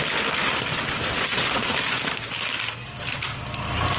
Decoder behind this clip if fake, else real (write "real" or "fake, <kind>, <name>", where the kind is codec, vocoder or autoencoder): real